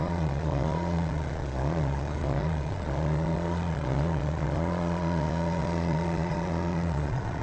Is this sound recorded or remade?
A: remade